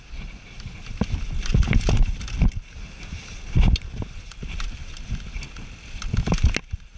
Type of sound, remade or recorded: recorded